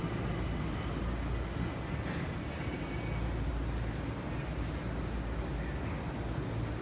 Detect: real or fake real